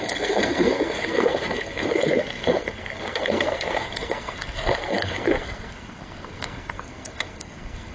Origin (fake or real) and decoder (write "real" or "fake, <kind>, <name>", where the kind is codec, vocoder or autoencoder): fake, codec, SNAC